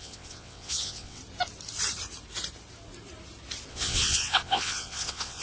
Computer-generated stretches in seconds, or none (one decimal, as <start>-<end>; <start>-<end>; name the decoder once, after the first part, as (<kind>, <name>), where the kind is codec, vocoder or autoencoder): 0.0-1.2 (vocoder, WaveNeXt); 3.7-5.4